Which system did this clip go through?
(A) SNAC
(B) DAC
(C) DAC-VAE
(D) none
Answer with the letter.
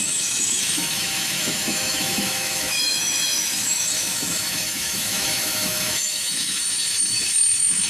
C